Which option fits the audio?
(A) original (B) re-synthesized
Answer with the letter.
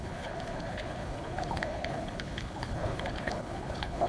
B